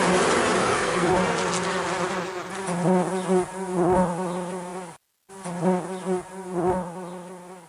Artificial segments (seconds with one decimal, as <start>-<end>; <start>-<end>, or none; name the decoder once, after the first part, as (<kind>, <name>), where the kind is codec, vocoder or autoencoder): 0.6-1.1 (codec, SNAC)